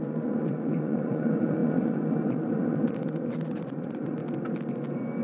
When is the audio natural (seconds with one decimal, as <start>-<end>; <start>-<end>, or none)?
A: 4.2-5.2